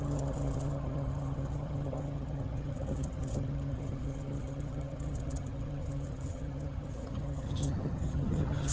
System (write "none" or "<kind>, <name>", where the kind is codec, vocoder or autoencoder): vocoder, HiFi-GAN